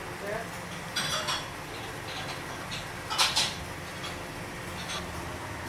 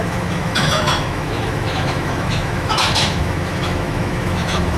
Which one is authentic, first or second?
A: first